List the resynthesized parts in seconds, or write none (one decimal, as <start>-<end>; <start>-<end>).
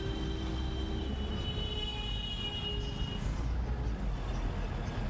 none